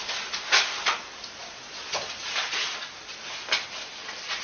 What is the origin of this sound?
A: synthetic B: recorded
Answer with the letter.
B